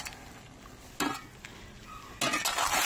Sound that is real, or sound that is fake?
real